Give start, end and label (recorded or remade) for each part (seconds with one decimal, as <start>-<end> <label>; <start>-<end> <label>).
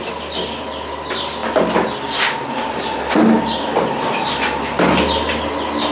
0.0-5.9 recorded